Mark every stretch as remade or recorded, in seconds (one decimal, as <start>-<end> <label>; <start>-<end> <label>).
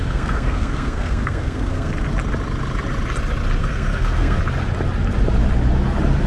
0.0-1.9 remade; 1.9-3.6 recorded; 3.6-4.4 remade; 4.4-6.3 recorded